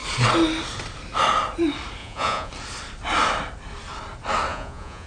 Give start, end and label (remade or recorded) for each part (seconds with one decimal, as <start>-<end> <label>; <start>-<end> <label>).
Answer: 0.0-2.0 recorded; 2.0-2.5 remade; 2.5-4.5 recorded; 4.5-5.1 remade